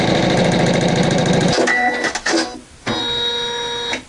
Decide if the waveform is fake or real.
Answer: real